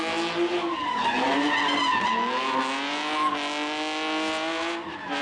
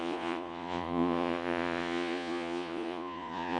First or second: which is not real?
second